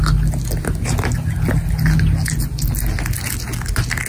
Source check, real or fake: real